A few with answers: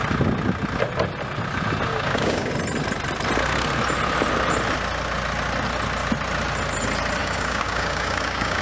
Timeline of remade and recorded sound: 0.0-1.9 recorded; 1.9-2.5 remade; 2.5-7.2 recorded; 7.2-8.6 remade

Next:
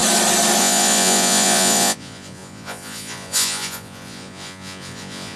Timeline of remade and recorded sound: 0.0-0.6 recorded; 0.6-5.4 remade

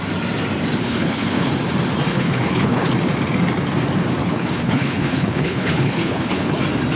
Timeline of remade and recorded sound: 0.0-0.8 recorded; 0.8-1.5 remade; 1.5-2.1 recorded; 2.1-2.9 remade; 2.9-4.2 recorded; 4.2-6.6 remade; 6.6-7.0 recorded